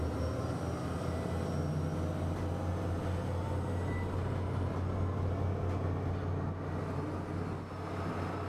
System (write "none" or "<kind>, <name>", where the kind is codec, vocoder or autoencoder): none